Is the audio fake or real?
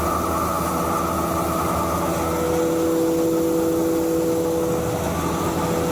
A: real